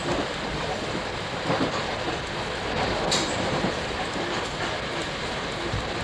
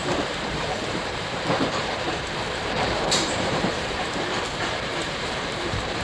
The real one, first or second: first